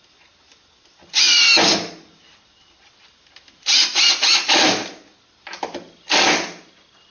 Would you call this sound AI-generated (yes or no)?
no